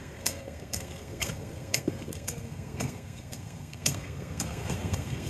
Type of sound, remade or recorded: remade